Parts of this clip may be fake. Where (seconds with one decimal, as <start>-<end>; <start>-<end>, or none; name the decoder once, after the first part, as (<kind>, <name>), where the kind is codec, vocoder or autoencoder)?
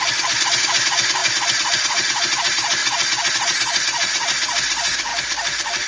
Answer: 2.8-3.3 (vocoder, BigVGAN v2)